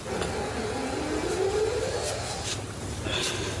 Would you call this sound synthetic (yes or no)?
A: no